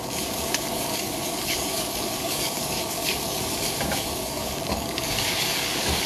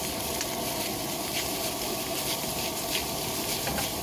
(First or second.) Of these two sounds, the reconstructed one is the first